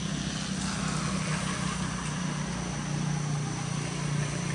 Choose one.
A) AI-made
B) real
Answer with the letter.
B